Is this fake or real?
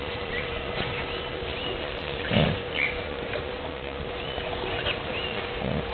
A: fake